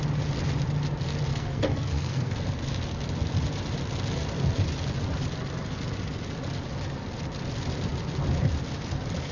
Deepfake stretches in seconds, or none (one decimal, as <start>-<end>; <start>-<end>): 1.3-2.3